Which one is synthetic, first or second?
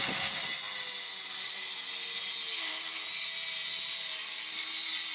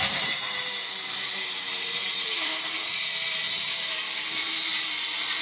second